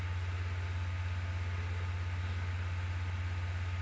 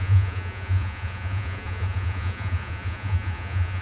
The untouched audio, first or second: first